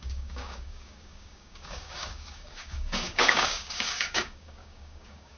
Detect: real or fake fake